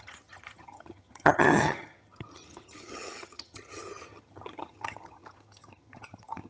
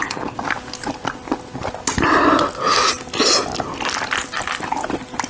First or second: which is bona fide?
second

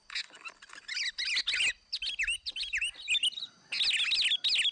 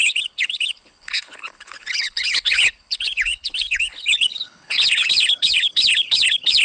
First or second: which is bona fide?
first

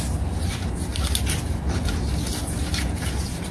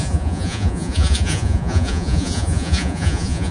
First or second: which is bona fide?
first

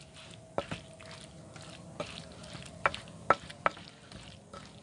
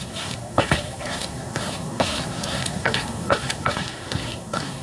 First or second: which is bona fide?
first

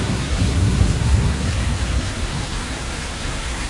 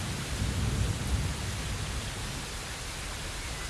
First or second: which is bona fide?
second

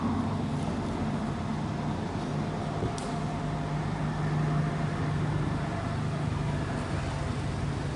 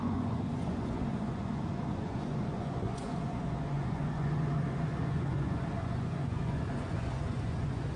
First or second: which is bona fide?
first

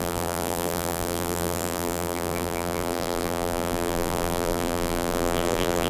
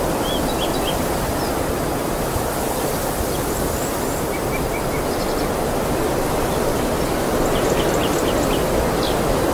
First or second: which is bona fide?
second